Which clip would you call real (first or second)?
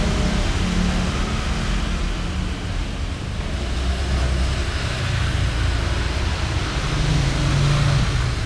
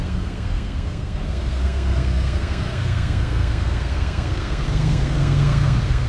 first